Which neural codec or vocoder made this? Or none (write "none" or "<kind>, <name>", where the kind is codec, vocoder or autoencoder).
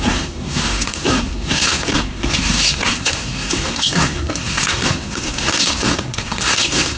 codec, SNAC